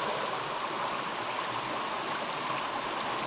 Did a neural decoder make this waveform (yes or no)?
no